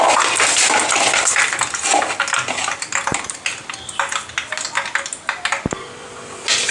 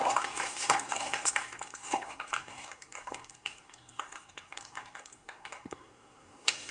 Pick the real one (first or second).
first